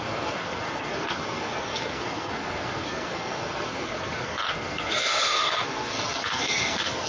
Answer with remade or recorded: remade